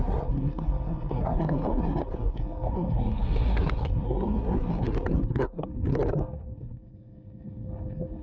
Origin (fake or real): fake